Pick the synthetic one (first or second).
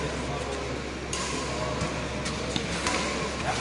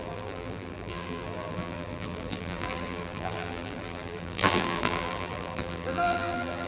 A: second